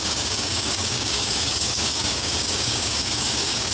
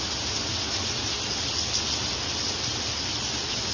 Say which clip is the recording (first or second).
second